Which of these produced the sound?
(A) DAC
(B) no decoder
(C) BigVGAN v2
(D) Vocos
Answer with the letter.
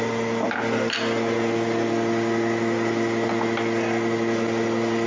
B